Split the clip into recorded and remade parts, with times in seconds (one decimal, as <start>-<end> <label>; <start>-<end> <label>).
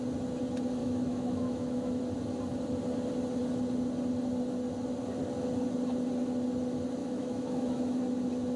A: 0.0-0.8 recorded; 0.8-2.0 remade; 2.0-7.0 recorded; 7.0-8.0 remade; 8.0-8.6 recorded